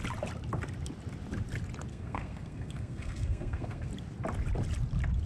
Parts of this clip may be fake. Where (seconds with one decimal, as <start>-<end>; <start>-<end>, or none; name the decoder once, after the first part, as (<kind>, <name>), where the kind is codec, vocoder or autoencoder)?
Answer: 1.9-3.9 (codec, SNAC)

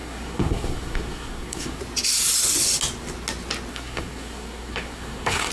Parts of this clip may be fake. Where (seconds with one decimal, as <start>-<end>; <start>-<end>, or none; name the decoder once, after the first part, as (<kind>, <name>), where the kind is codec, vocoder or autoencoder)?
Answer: 0.0-1.8 (codec, SNAC); 3.7-5.5

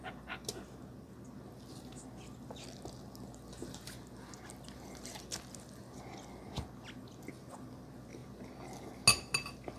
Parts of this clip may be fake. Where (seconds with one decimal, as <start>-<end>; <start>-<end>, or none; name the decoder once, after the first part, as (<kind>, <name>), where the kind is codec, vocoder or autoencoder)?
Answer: none

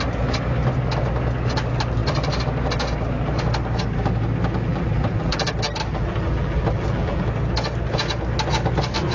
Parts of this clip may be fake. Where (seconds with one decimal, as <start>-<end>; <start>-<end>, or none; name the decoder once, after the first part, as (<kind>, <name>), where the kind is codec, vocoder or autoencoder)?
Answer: 4.7-5.5 (vocoder, BigVGAN v2); 5.9-7.2

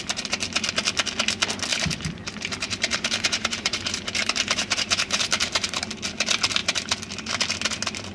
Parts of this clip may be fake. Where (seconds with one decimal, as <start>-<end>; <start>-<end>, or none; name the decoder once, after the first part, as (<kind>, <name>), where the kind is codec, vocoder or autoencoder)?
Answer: 1.7-6.0 (vocoder, BigVGAN v2)

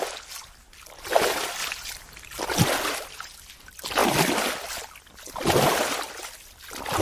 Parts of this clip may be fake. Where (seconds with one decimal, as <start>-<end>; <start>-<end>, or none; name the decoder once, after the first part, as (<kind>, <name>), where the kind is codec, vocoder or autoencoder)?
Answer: 4.0-6.2 (vocoder, BigVGAN v2)

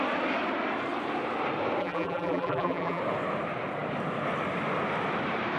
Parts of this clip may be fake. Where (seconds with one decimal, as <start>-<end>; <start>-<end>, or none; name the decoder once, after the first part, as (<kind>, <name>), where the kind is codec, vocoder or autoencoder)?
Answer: 1.8-3.0 (vocoder, BigVGAN v2)